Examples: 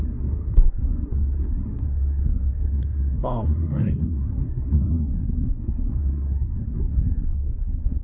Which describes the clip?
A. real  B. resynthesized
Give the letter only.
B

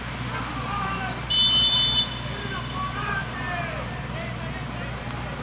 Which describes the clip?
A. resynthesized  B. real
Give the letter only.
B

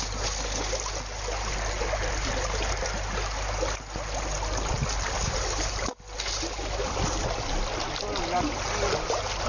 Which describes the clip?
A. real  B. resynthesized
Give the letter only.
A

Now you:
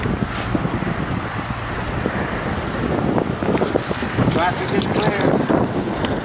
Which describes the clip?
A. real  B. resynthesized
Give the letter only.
B